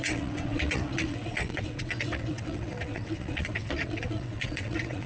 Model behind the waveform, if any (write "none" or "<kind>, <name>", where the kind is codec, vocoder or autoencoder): vocoder, WaveNeXt